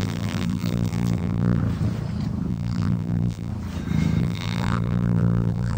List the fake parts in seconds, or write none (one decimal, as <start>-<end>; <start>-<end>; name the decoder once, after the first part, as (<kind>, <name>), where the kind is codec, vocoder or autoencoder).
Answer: 0.0-1.6 (vocoder, BigVGAN v2); 2.5-3.5; 4.2-5.8